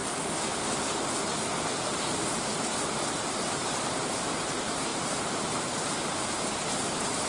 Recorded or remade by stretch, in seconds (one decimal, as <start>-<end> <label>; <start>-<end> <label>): 0.0-2.1 recorded; 2.1-7.3 remade